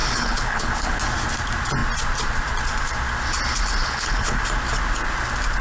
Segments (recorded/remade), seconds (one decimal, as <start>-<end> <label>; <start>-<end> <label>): 0.0-1.0 remade; 1.0-3.8 recorded; 3.8-4.4 remade; 4.4-5.6 recorded